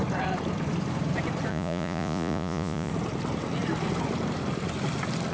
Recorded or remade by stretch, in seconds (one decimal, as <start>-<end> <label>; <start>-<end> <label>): 0.0-1.5 recorded; 1.5-2.9 remade; 2.9-5.3 recorded